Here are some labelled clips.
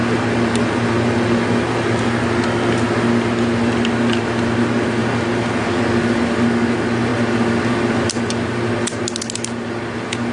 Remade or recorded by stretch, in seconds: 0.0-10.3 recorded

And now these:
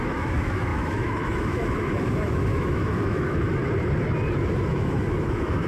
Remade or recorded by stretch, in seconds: 0.0-3.6 remade; 3.6-4.5 recorded; 4.5-5.7 remade

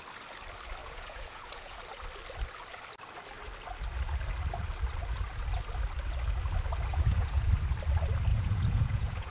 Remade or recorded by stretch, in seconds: 0.0-0.8 recorded; 0.8-1.8 remade; 1.8-6.9 recorded; 6.9-7.5 remade; 7.5-8.3 recorded; 8.3-9.3 remade

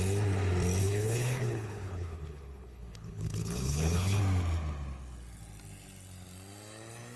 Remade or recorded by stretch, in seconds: 0.0-0.8 recorded; 0.8-4.2 remade; 4.2-7.2 recorded

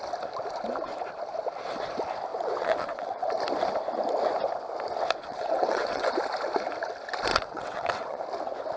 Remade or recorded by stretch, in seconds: 0.0-2.3 recorded; 2.3-3.3 remade; 3.3-5.3 recorded; 5.3-6.1 remade; 6.1-7.3 recorded; 7.3-8.2 remade; 8.2-8.8 recorded

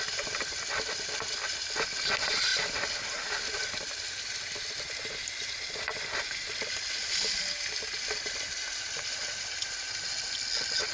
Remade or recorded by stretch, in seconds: 0.0-10.9 recorded